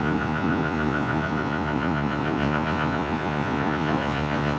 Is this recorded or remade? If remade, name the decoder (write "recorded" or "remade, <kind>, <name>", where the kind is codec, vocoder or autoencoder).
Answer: remade, vocoder, Vocos